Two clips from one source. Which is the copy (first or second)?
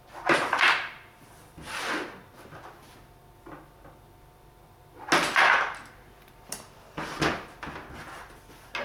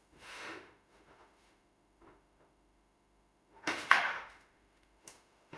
second